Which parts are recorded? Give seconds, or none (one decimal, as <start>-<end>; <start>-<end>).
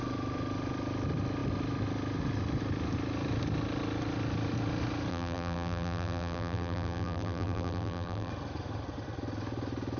0.0-5.1; 8.3-10.0